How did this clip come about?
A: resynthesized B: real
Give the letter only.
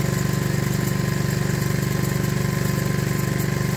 B